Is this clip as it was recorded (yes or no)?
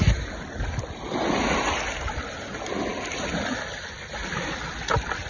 yes